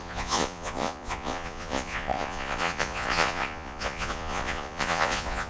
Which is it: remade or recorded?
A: remade